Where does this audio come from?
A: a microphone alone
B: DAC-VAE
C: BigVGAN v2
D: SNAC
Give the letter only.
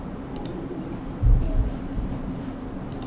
C